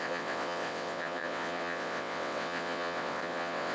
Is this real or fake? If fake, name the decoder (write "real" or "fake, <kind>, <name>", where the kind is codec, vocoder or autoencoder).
fake, vocoder, WaveNeXt